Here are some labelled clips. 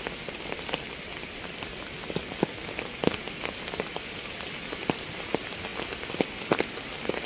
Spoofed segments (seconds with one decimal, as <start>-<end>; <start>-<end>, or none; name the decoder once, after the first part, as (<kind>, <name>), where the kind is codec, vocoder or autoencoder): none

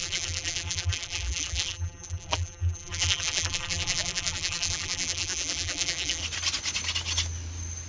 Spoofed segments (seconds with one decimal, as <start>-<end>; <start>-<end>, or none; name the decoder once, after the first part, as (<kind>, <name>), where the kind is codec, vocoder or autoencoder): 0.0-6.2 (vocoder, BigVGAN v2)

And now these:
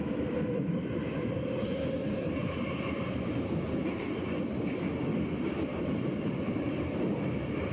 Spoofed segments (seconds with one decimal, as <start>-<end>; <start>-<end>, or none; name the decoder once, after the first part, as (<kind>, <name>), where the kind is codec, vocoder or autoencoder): 2.4-4.1 (vocoder, BigVGAN v2); 5.7-6.7

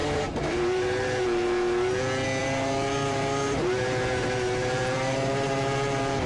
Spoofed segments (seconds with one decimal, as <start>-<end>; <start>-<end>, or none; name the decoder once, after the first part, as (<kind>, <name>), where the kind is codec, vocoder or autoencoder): 0.0-2.0 (vocoder, BigVGAN v2); 2.4-6.3